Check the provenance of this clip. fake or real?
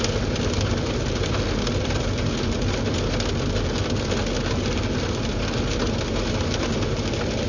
real